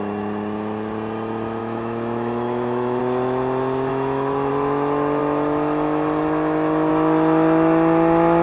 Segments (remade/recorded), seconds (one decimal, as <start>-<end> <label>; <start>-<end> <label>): 0.0-1.6 recorded; 1.6-3.0 remade; 3.0-3.9 recorded; 3.9-4.5 remade; 4.5-8.4 recorded